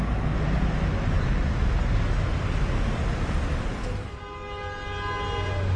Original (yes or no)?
yes